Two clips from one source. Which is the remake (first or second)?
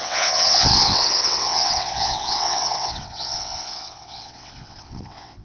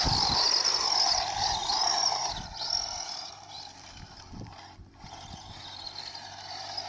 first